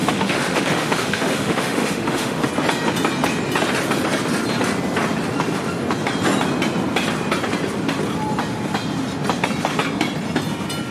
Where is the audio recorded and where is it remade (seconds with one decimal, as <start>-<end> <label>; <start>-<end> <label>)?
0.0-2.5 remade; 2.5-10.9 recorded